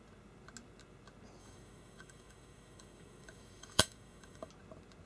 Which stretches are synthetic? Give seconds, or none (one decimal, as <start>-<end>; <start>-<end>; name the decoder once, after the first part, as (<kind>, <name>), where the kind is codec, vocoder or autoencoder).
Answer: 1.4-4.5 (autoencoder, DAC-VAE)